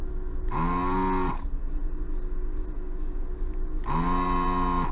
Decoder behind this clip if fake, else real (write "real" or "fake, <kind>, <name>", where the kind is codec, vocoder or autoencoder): real